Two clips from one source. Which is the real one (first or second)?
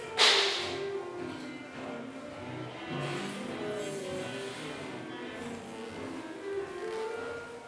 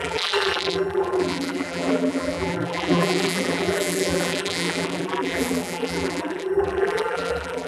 first